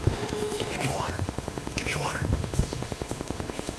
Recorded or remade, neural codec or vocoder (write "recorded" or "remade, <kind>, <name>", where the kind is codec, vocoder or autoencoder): remade, autoencoder, DAC-VAE